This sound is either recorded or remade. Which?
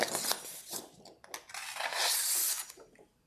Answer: recorded